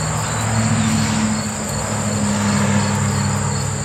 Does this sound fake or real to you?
real